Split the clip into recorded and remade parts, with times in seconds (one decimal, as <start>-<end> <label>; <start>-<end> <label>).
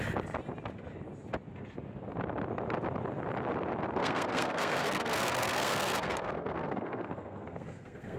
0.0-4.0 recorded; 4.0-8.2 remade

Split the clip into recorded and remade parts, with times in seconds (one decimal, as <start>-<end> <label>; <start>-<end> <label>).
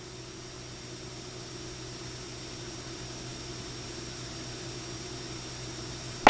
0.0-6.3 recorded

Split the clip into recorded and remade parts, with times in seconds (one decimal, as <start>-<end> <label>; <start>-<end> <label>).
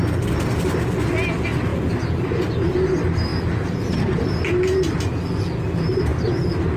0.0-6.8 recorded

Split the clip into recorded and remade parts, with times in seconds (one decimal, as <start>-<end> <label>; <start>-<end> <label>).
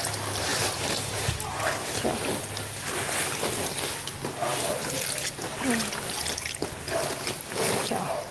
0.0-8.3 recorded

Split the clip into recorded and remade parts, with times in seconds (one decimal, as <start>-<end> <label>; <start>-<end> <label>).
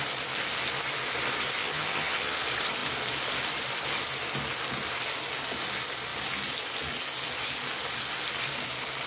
0.0-1.6 recorded; 1.6-2.4 remade; 2.4-9.1 recorded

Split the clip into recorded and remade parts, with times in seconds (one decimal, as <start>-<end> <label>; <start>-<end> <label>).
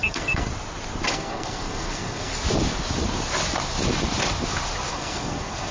0.0-0.5 remade; 0.5-1.1 recorded; 1.1-2.3 remade; 2.3-4.9 recorded; 4.9-5.7 remade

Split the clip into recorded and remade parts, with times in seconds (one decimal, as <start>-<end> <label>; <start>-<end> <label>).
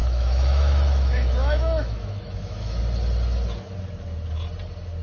0.0-2.8 remade; 2.8-5.0 recorded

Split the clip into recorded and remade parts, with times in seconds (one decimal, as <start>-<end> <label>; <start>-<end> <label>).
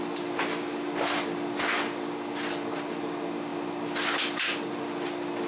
0.0-5.5 recorded